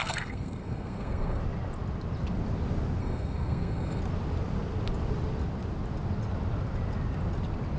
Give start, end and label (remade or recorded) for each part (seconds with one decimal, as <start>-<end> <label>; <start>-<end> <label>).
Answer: 0.0-1.4 remade; 1.4-3.0 recorded; 3.0-4.0 remade; 4.0-7.8 recorded

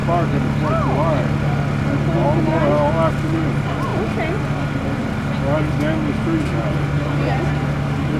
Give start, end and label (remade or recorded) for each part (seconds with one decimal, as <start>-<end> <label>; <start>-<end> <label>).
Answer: 0.0-8.2 recorded

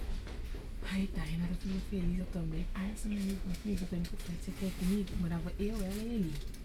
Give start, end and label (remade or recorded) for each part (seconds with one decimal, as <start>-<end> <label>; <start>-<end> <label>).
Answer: 0.0-2.6 recorded; 2.6-3.9 remade; 3.9-6.6 recorded

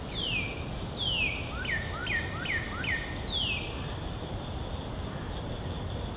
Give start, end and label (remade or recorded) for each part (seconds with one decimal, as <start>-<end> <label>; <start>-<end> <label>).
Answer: 0.0-6.2 recorded

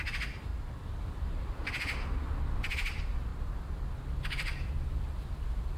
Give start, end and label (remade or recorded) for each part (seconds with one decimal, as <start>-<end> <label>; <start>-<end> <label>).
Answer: 0.0-0.5 remade; 0.5-1.0 recorded; 1.0-3.3 remade; 3.3-4.2 recorded; 4.2-5.8 remade